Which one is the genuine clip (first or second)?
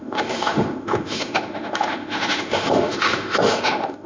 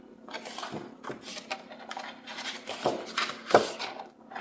second